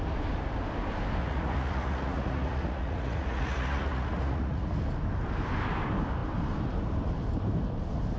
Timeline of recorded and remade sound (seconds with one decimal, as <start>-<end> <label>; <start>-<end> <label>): 0.0-1.2 recorded; 1.2-4.7 remade; 4.7-8.2 recorded